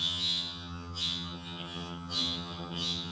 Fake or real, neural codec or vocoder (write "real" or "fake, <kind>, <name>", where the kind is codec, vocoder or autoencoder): fake, vocoder, HiFi-GAN